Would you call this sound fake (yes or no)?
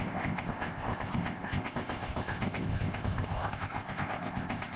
yes